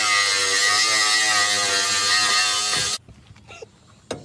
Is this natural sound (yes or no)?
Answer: yes